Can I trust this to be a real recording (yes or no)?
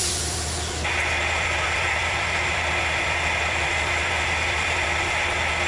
no